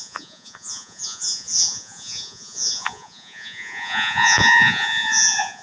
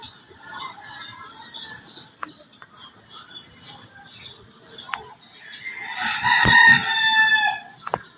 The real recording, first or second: second